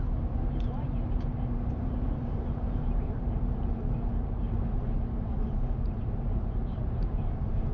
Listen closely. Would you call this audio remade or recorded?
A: remade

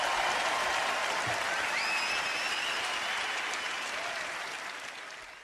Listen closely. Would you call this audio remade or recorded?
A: recorded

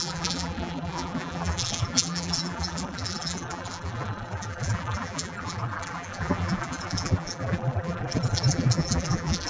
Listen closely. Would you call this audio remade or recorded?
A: remade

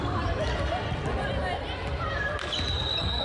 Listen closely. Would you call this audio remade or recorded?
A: remade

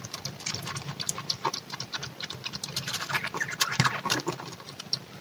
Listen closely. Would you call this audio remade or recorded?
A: remade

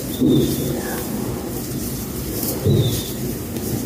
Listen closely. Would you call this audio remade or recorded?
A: recorded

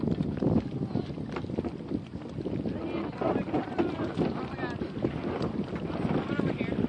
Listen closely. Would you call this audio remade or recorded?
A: recorded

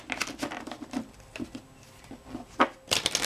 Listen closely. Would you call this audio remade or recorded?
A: recorded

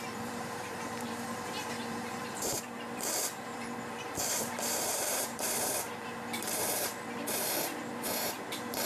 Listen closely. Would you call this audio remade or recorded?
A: remade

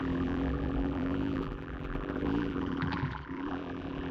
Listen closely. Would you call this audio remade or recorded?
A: remade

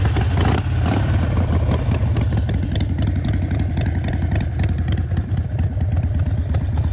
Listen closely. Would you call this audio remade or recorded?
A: remade